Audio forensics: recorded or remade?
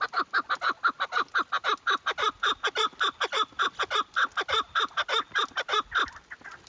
recorded